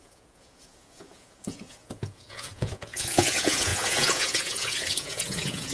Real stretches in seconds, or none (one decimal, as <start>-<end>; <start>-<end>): none